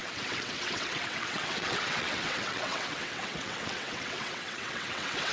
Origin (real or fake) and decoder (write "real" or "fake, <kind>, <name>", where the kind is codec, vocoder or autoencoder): fake, vocoder, WaveNeXt